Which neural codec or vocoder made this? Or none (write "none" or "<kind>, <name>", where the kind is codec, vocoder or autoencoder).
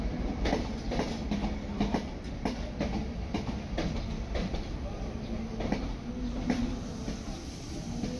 none